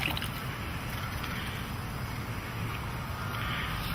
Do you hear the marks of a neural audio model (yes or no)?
no